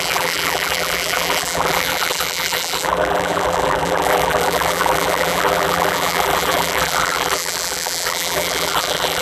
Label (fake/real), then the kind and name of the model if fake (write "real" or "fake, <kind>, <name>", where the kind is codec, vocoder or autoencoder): fake, vocoder, BigVGAN v2